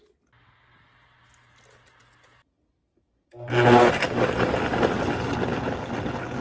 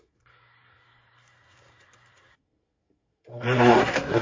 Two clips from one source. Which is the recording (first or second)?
first